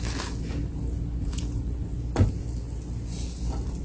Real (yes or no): yes